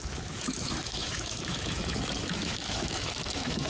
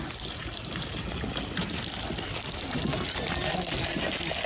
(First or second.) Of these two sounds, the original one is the second